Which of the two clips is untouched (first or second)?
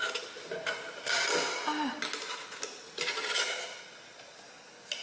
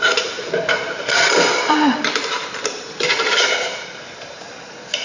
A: first